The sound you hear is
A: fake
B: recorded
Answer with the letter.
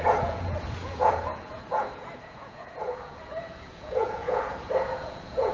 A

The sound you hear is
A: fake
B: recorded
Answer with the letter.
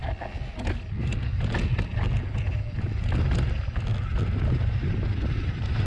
B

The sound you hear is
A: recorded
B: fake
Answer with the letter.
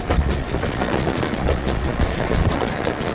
B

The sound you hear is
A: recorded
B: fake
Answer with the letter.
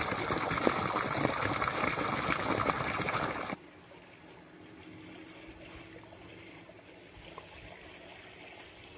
A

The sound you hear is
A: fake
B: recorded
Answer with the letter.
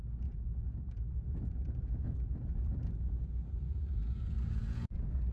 A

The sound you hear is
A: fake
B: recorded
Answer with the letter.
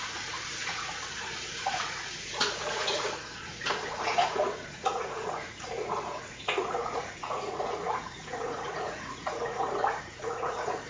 A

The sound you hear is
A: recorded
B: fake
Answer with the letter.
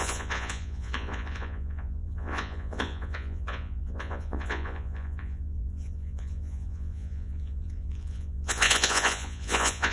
B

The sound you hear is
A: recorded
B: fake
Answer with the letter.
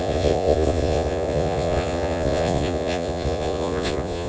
B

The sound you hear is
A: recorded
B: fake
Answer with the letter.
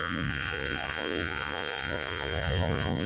B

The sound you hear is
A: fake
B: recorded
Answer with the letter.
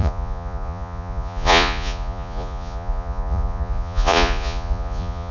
A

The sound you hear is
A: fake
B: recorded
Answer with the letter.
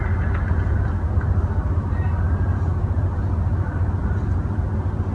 B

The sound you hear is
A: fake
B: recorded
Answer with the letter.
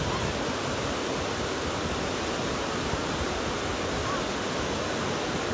B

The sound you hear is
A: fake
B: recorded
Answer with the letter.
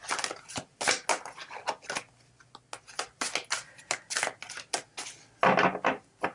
B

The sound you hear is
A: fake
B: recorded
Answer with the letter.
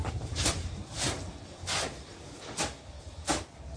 B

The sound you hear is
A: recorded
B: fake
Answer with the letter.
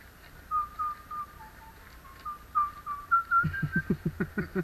A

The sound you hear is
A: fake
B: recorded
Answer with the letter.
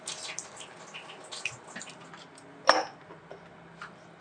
B